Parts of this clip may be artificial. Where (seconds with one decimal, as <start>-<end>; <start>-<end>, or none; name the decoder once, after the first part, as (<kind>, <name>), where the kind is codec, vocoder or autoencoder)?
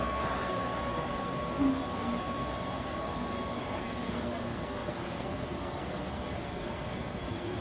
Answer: 0.0-7.6 (codec, SNAC)